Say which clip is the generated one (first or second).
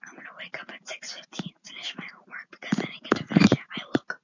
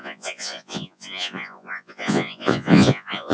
second